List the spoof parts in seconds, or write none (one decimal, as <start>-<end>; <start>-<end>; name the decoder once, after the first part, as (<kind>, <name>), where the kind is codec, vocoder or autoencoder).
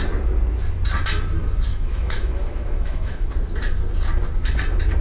1.7-3.3 (autoencoder, DAC-VAE)